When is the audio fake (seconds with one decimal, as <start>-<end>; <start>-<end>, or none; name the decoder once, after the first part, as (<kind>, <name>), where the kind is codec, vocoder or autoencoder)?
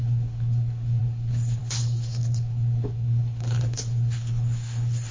0.0-5.1 (codec, HILCodec)